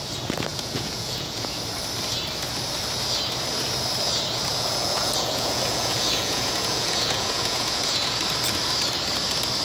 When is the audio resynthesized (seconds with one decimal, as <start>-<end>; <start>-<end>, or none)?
0.5-1.6; 4.5-8.2